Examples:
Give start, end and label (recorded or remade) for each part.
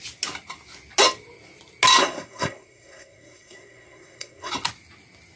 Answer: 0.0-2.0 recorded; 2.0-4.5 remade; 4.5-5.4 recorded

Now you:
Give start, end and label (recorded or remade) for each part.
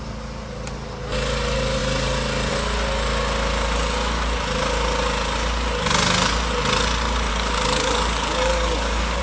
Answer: 0.0-7.3 recorded; 7.3-9.2 remade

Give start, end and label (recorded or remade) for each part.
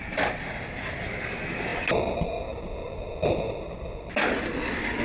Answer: 0.0-5.0 recorded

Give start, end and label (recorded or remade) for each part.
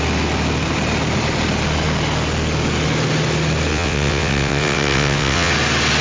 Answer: 0.0-3.7 recorded; 3.7-5.5 remade; 5.5-6.0 recorded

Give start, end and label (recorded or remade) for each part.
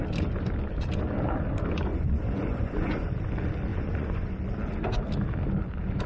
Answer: 0.0-1.9 recorded; 1.9-3.1 remade; 3.1-3.7 recorded; 3.7-4.3 remade; 4.3-6.1 recorded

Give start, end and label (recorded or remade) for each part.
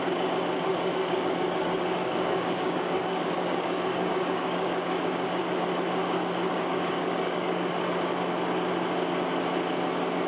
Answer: 0.0-0.7 recorded; 0.7-5.4 remade; 5.4-6.0 recorded; 6.0-7.7 remade; 7.7-10.3 recorded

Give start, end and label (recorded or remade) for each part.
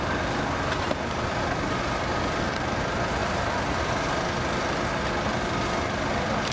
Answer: 0.0-6.5 recorded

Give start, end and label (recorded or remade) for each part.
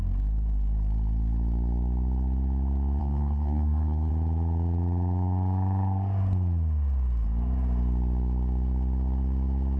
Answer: 0.0-3.0 recorded; 3.0-4.1 remade; 4.1-9.8 recorded